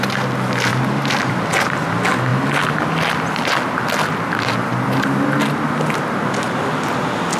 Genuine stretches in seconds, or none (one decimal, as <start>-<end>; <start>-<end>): 0.0-0.7; 1.3-2.3; 3.2-7.4